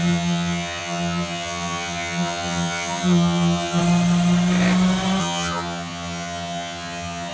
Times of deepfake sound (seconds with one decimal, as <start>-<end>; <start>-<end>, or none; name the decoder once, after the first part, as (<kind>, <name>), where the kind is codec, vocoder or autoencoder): 0.0-3.8 (vocoder, HiFi-GAN); 5.2-7.3